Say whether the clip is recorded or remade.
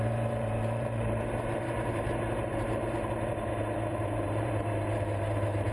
remade